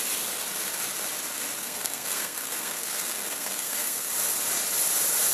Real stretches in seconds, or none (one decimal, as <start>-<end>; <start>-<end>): 0.0-1.6; 4.1-5.3